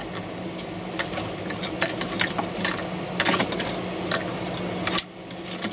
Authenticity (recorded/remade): recorded